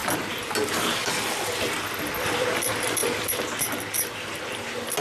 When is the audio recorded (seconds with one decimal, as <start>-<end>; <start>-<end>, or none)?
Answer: 0.0-5.0